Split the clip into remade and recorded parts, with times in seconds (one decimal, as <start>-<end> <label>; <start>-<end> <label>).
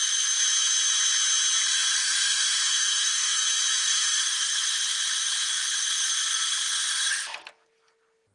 0.0-2.0 recorded; 2.0-3.4 remade; 3.4-3.8 recorded; 3.8-4.5 remade; 4.5-8.3 recorded